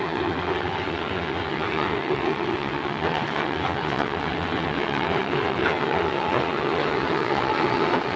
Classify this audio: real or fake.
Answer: fake